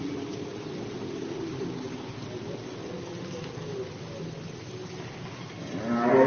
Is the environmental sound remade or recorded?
recorded